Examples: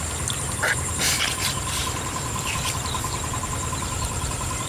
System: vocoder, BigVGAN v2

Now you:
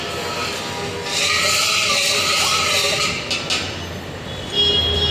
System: none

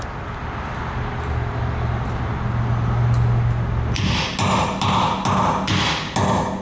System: none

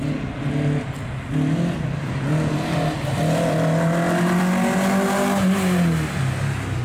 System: none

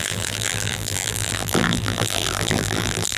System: vocoder, BigVGAN v2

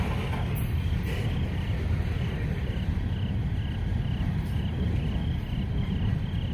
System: none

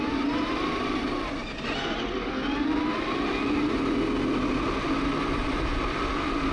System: none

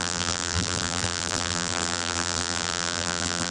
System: vocoder, BigVGAN v2